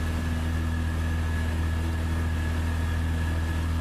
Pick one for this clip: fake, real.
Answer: real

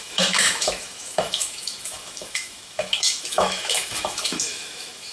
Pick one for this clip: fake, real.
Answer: fake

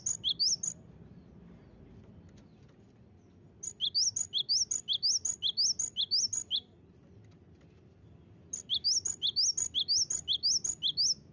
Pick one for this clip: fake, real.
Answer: real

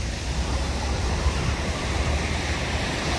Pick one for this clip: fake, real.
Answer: fake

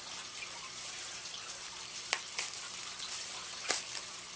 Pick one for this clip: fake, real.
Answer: real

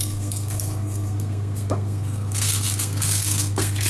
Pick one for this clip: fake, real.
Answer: fake